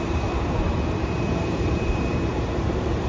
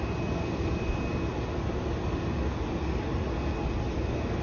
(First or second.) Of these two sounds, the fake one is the first